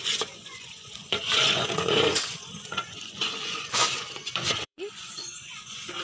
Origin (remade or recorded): remade